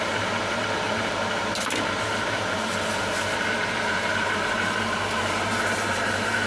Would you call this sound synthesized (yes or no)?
yes